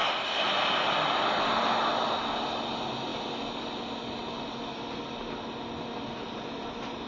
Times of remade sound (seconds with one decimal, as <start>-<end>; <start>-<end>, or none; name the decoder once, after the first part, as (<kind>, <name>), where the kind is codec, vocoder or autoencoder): 0.0-0.5 (vocoder, BigVGAN v2)